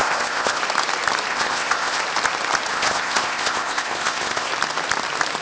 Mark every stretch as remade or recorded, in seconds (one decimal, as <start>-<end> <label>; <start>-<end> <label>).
0.0-0.6 remade; 0.6-1.3 recorded; 1.3-2.0 remade; 2.0-2.7 recorded; 2.7-4.5 remade; 4.5-5.4 recorded